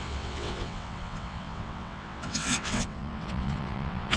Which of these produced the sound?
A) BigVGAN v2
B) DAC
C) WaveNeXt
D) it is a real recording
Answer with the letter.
C